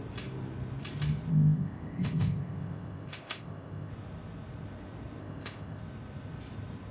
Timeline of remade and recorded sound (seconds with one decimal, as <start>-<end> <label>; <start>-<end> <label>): 0.0-1.3 recorded; 1.3-3.9 remade; 3.9-5.2 recorded; 5.2-5.8 remade; 5.8-6.9 recorded